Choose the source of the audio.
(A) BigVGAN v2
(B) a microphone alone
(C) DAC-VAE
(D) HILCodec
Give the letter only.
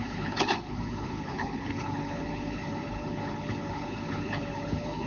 D